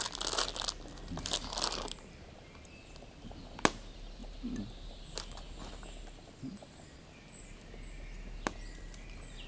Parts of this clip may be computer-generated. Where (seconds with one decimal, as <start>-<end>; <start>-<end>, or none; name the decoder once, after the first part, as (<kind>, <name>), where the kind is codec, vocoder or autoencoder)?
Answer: none